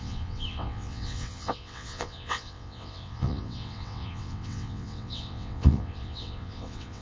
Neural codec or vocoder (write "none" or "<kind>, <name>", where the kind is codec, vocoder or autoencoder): vocoder, WaveNeXt